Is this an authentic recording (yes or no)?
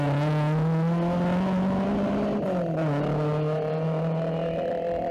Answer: yes